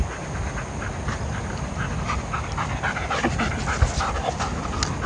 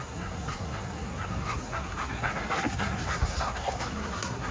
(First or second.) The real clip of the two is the first